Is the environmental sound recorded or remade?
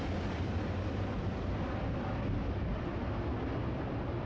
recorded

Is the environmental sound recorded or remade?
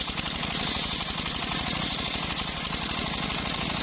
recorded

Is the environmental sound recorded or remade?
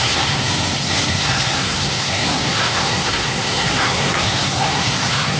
remade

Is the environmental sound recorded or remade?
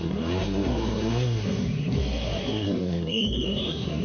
remade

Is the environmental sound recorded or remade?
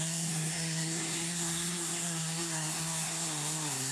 remade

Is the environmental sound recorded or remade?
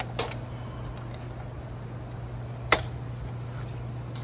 recorded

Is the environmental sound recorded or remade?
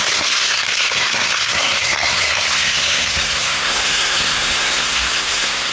remade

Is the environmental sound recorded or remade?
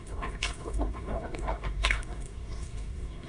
remade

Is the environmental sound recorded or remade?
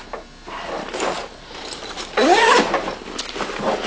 recorded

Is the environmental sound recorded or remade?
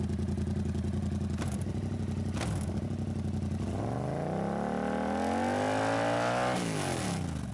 recorded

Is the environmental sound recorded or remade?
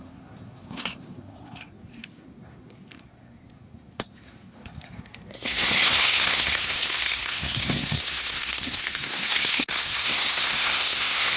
remade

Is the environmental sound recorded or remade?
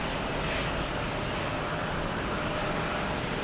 recorded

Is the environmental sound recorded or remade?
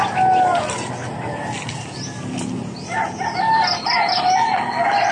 recorded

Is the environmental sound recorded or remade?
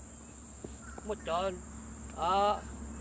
recorded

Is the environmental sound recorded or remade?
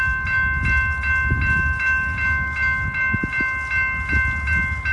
recorded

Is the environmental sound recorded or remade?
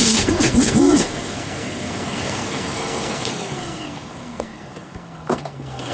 remade